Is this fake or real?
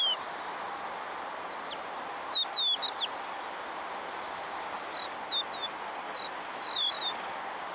real